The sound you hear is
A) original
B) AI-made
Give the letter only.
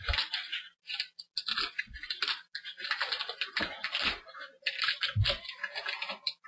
A